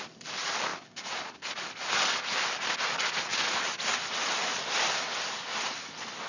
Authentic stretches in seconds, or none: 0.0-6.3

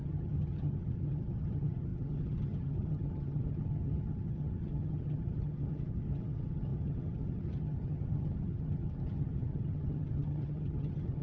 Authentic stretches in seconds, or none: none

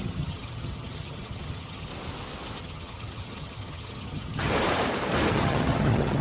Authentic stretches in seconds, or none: 1.9-2.6; 4.5-5.3

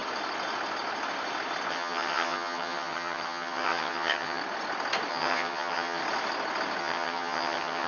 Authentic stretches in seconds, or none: 0.0-1.7; 4.4-5.1; 6.0-6.8